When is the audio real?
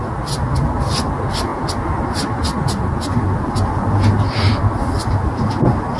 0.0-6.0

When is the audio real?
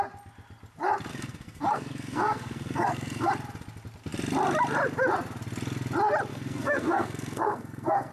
0.0-1.1; 3.3-6.3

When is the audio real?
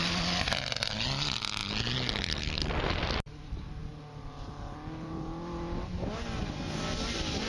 0.0-7.5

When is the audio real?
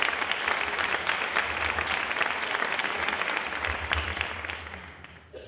0.0-5.5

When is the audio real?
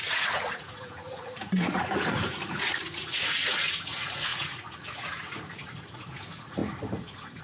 none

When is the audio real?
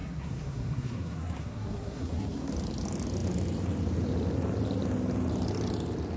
2.5-6.2